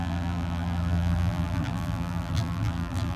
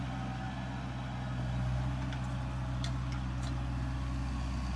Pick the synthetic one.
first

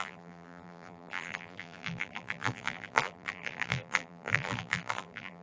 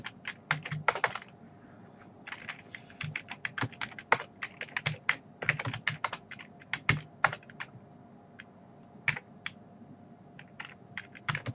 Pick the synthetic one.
first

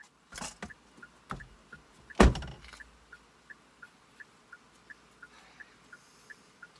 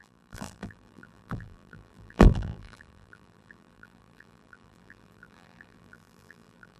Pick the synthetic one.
second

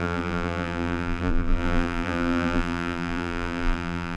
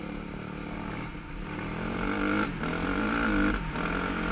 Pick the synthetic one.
first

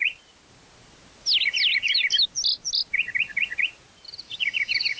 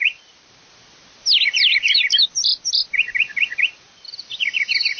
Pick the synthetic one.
second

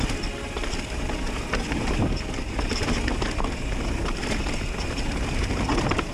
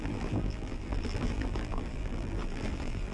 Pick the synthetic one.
second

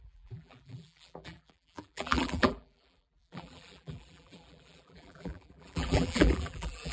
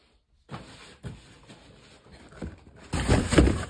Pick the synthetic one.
first